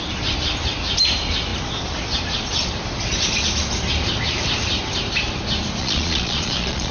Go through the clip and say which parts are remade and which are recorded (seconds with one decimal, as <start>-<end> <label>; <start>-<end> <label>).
0.0-5.8 recorded; 5.8-6.9 remade